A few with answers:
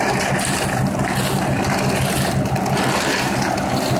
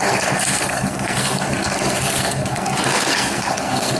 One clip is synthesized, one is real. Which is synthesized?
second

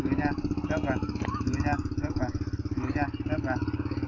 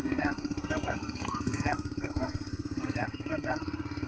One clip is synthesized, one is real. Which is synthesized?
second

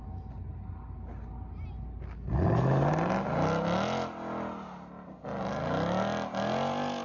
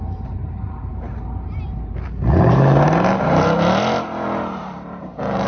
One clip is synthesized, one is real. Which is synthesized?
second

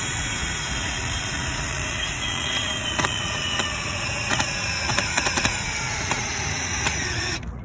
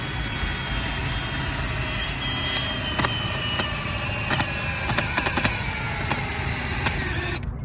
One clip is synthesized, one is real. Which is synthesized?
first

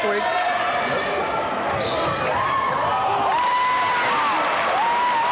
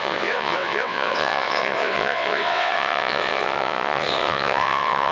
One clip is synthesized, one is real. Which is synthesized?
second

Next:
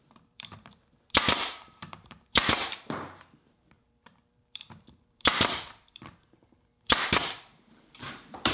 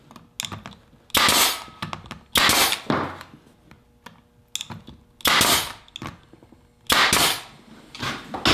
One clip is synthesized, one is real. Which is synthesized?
first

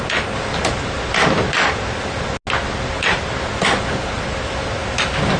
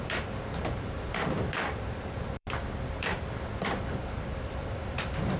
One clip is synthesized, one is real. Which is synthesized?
second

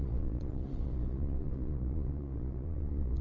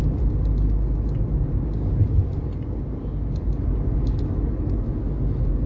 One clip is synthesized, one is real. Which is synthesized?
first